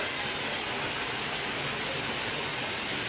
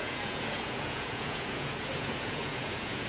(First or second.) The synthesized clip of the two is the second